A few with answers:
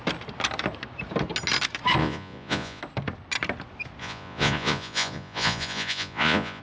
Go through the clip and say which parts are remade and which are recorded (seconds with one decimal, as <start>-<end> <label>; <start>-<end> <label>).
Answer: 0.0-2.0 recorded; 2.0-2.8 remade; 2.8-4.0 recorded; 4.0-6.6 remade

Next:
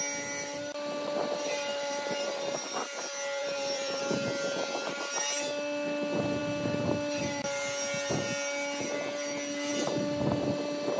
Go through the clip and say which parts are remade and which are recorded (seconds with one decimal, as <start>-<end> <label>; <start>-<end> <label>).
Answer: 0.0-1.7 recorded; 1.7-2.3 remade; 2.3-3.4 recorded; 3.4-4.0 remade; 4.0-11.0 recorded

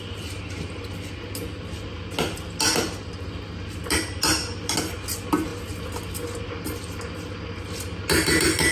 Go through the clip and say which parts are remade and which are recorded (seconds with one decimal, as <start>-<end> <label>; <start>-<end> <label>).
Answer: 0.0-8.7 recorded